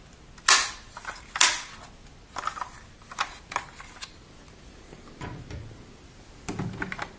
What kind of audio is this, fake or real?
real